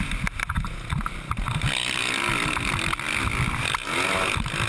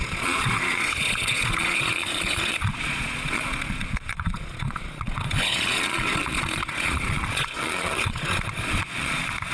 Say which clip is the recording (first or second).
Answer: first